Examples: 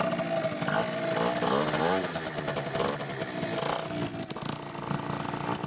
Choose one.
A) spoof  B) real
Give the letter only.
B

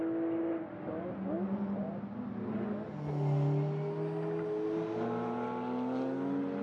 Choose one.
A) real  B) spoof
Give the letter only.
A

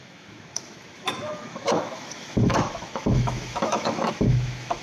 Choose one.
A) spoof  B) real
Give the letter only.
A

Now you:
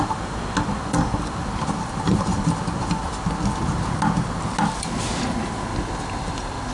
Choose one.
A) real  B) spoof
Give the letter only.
A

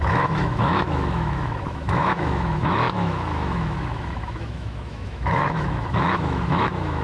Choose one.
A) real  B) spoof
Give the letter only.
B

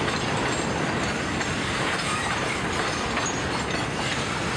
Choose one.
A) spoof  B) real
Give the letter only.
B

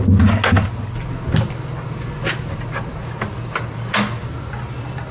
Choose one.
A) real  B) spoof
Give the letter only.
A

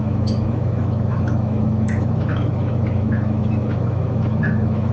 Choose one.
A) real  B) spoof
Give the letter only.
B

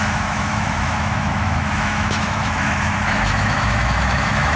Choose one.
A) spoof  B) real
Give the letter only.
A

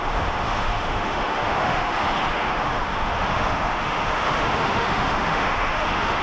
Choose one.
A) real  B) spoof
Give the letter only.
B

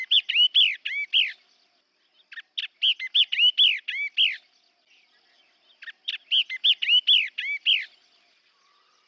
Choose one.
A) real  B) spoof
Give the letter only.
A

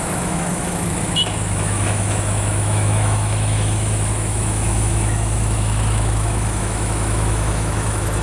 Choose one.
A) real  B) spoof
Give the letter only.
B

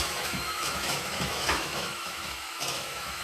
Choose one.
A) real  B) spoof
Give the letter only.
B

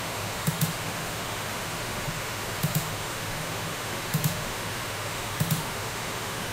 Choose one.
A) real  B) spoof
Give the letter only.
B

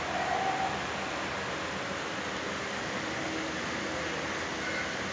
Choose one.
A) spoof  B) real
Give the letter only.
B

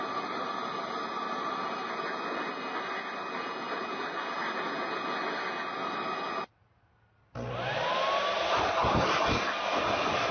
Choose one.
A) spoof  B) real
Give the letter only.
B